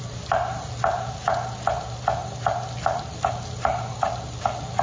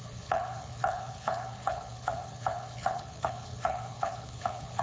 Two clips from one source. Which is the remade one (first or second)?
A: second